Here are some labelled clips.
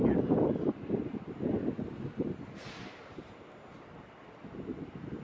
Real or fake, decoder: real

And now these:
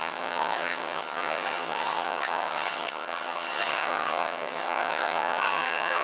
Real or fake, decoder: fake, vocoder, HiFi-GAN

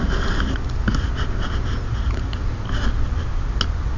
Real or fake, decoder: real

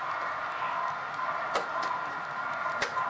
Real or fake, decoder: real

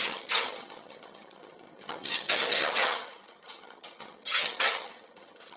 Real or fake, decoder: fake, vocoder, HiFi-GAN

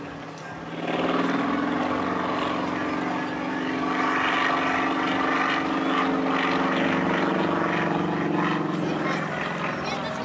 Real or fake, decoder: real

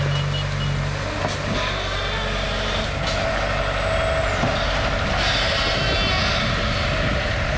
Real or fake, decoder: real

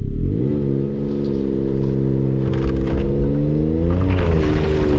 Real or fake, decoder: real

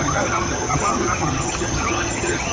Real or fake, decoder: fake, vocoder, HiFi-GAN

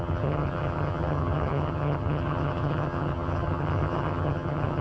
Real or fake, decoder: fake, vocoder, HiFi-GAN